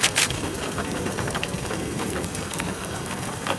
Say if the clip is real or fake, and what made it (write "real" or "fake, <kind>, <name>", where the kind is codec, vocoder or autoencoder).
fake, codec, SNAC